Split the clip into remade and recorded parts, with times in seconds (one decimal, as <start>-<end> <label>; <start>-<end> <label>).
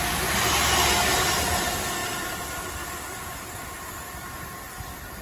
0.0-5.2 recorded